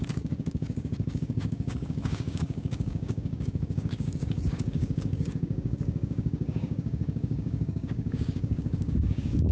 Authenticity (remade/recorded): remade